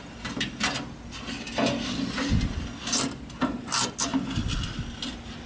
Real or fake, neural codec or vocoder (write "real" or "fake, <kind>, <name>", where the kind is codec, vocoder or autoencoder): real